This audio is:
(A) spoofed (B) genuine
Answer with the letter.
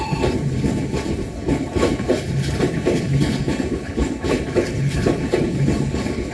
A